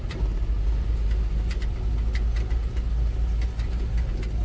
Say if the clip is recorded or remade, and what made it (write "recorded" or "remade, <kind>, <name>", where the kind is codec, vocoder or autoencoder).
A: recorded